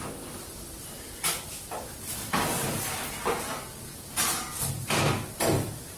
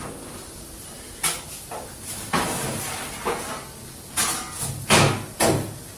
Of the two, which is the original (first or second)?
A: second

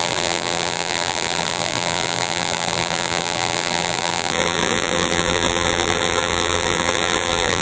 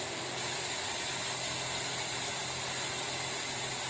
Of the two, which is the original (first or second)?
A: second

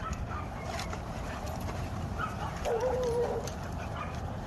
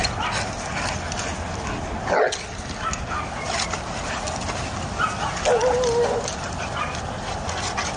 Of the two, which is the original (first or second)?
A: second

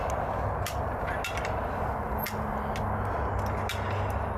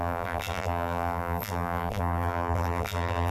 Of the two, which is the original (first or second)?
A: first